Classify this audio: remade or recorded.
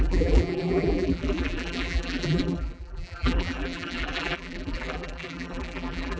remade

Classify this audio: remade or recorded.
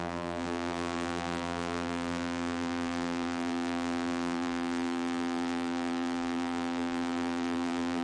remade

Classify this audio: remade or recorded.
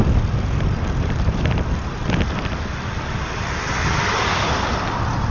remade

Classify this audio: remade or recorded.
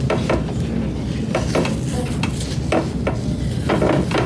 recorded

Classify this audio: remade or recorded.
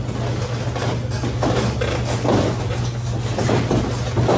recorded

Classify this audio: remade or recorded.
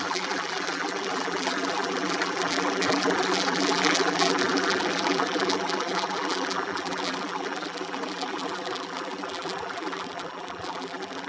remade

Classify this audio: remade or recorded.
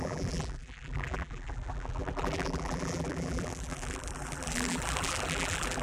remade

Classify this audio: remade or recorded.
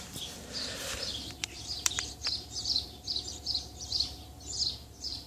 remade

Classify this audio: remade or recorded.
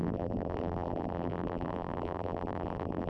remade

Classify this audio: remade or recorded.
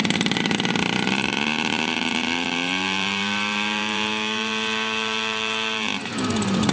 remade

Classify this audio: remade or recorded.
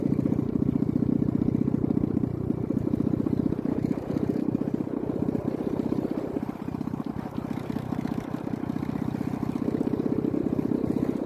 remade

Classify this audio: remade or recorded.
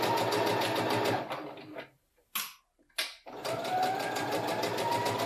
recorded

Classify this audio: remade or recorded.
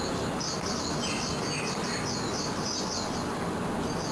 remade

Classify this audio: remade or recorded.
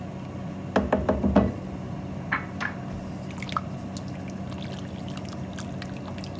recorded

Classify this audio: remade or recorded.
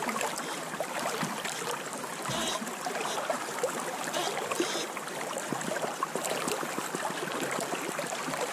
remade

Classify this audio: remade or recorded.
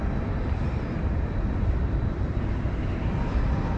remade